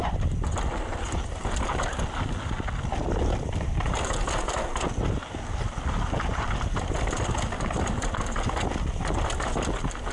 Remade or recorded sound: recorded